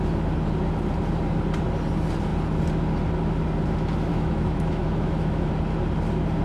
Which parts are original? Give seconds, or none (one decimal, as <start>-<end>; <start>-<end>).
0.0-4.1; 5.5-6.4